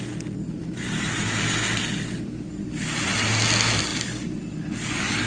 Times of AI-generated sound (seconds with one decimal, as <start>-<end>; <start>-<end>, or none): none